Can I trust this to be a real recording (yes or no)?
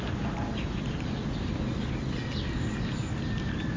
yes